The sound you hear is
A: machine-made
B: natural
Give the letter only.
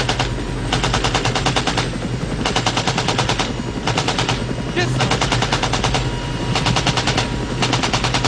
B